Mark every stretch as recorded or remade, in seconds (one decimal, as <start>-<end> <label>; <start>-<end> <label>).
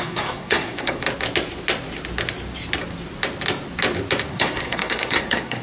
0.0-1.0 remade; 1.0-4.3 recorded; 4.3-5.6 remade